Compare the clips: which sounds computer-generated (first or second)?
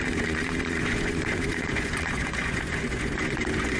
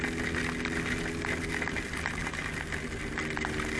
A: first